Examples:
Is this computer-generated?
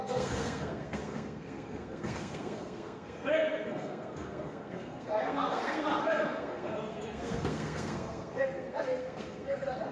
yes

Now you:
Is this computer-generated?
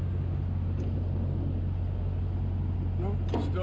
no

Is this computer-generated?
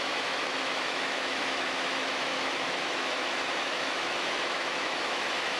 yes